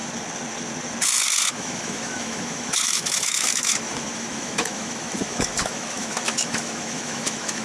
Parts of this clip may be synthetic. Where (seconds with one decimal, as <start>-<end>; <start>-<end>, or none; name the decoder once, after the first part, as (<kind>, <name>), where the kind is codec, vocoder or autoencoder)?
1.5-7.6 (autoencoder, DAC-VAE)